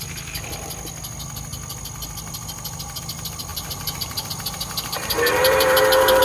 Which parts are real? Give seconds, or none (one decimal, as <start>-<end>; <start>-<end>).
0.0-3.5; 4.3-5.4